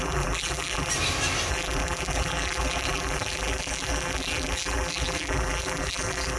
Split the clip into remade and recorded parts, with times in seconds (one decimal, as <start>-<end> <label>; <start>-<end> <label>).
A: 0.0-0.9 remade; 0.9-1.5 recorded; 1.5-6.4 remade